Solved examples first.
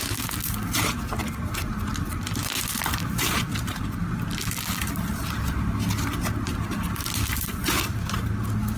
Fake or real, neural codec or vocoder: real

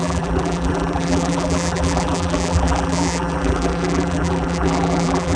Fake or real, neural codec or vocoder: fake, vocoder, BigVGAN v2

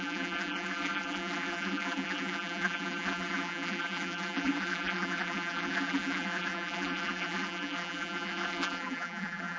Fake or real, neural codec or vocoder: fake, vocoder, BigVGAN v2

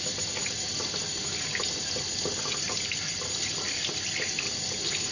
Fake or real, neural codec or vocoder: real